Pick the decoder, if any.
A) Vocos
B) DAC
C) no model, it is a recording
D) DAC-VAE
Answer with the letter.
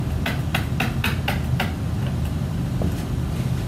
C